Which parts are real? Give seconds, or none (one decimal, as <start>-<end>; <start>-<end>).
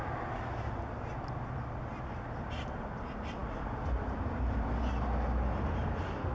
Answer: 0.0-6.3